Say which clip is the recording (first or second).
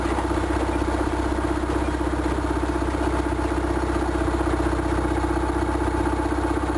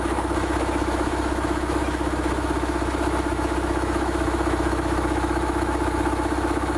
first